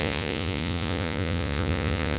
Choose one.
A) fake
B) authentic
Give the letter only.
A